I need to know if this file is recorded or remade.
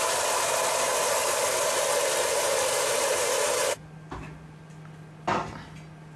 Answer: recorded